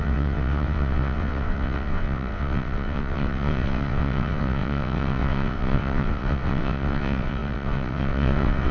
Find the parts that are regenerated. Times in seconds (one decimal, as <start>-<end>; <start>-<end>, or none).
0.0-8.7

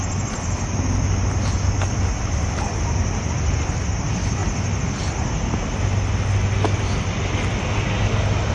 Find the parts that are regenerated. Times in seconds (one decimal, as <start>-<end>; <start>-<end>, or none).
none

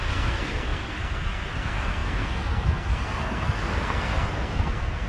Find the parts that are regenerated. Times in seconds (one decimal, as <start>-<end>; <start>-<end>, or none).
0.0-5.1

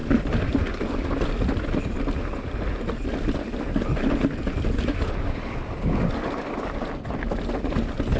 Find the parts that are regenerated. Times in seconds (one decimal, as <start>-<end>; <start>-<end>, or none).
none

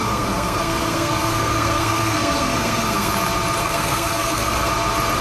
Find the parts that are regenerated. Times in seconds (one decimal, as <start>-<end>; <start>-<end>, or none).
0.0-3.1; 3.6-4.7

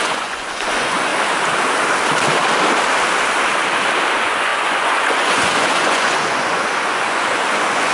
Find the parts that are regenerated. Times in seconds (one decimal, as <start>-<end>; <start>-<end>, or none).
0.0-1.1; 4.1-7.9